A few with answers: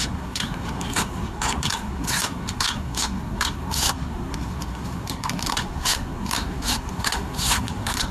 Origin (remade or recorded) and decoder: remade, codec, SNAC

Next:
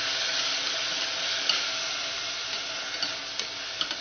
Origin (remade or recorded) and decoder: recorded